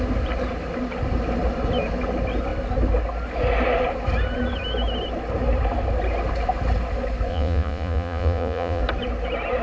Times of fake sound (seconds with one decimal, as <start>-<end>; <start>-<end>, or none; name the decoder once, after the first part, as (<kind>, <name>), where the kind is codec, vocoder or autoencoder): 7.3-8.8 (vocoder, Vocos)